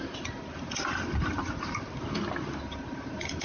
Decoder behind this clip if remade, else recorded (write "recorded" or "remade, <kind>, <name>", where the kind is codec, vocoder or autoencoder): recorded